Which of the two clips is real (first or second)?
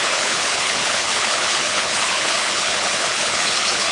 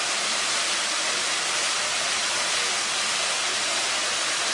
second